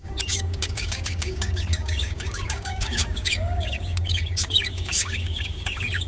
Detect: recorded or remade remade